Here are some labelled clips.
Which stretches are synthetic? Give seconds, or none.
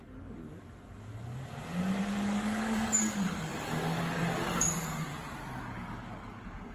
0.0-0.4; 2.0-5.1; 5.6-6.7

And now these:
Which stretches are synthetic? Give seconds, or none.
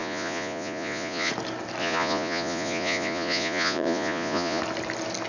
0.0-1.3; 1.8-4.6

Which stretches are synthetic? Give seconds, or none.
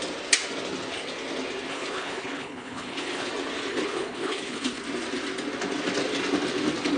1.7-3.3; 3.7-4.8